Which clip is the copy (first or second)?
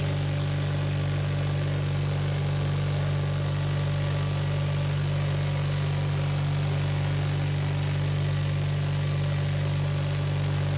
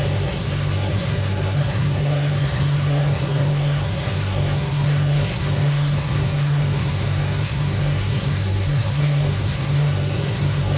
second